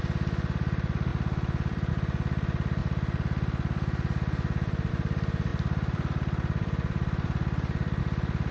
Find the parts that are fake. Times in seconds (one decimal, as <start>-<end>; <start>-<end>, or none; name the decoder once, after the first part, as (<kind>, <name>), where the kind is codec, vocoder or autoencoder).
1.1-1.9 (vocoder, BigVGAN v2); 2.8-4.9; 5.5-8.0